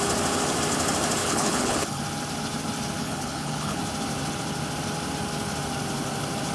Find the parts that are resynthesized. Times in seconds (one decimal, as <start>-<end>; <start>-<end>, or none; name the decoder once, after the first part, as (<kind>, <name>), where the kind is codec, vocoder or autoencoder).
1.2-2.0 (codec, HILCodec); 3.0-3.8